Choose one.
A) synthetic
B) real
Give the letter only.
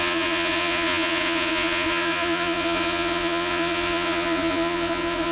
A